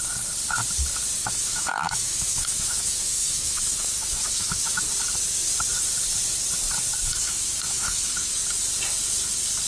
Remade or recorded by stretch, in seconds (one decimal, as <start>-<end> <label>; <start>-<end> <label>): 0.0-1.2 recorded; 1.2-4.9 remade; 4.9-7.1 recorded; 7.1-8.4 remade; 8.4-9.7 recorded